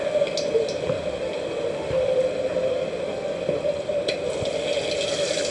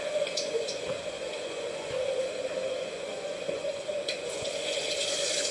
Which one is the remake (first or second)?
second